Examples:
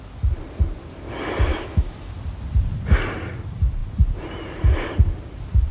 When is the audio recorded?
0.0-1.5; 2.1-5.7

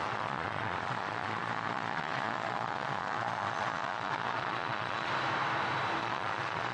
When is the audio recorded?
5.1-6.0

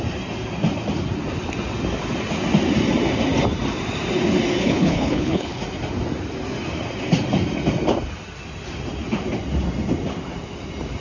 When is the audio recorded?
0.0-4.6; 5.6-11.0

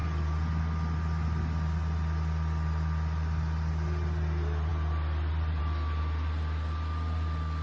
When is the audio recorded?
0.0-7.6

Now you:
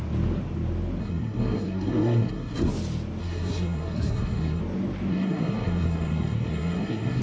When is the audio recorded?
0.0-1.0; 2.7-3.2; 4.6-5.1

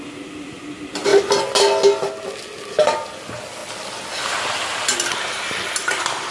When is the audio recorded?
0.0-6.3